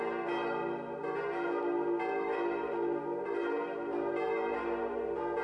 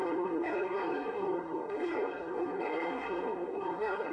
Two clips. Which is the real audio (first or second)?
first